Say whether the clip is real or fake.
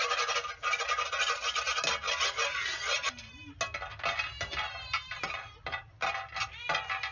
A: real